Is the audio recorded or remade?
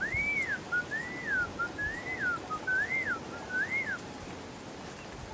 recorded